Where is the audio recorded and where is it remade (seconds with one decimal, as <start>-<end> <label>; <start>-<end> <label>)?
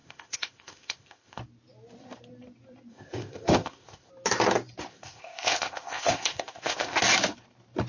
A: 0.0-1.4 remade; 1.4-2.9 recorded; 2.9-4.1 remade; 4.1-4.9 recorded; 4.9-7.0 remade; 7.0-7.9 recorded